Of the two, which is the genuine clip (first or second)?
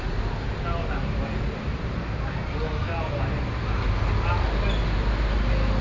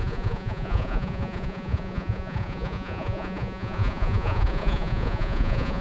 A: first